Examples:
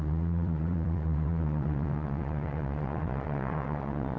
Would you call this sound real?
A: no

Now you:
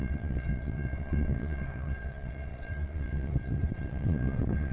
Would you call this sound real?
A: no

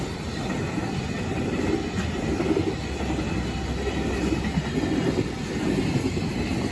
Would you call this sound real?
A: yes